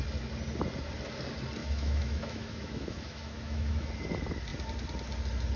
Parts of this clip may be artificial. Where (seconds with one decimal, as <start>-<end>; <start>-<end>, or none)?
1.6-3.9

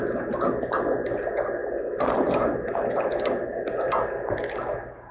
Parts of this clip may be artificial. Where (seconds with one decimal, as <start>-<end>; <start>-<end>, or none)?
none

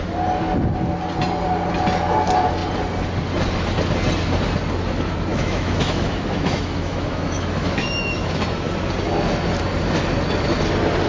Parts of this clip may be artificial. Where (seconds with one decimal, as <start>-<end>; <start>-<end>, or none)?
5.3-8.4